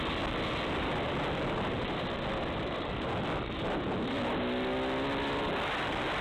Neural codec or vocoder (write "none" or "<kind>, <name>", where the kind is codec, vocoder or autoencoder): none